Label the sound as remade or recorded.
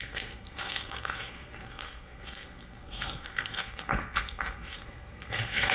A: remade